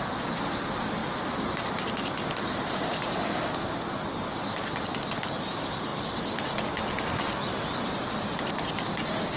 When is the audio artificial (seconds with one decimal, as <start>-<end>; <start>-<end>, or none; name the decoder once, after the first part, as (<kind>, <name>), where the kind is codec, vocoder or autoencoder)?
none